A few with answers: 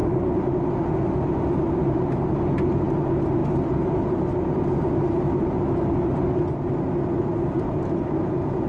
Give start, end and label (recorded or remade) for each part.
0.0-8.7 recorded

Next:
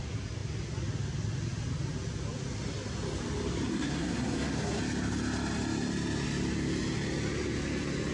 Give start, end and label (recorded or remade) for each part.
0.0-3.7 recorded; 3.7-4.8 remade; 4.8-8.1 recorded

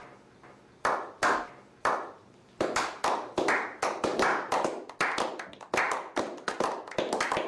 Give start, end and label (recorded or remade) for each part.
0.0-7.5 recorded

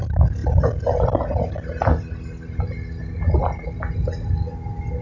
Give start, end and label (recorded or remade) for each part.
0.0-5.0 recorded

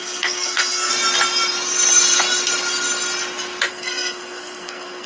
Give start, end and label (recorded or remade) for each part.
0.0-0.9 remade; 0.9-3.7 recorded; 3.7-5.1 remade